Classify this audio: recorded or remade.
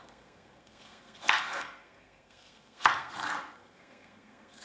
remade